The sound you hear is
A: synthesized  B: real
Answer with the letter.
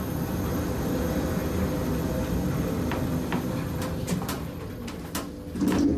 B